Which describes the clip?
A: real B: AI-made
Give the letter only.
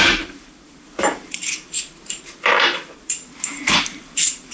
B